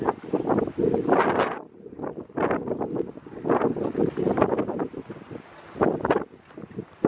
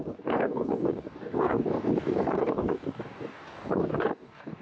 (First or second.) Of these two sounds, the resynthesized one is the second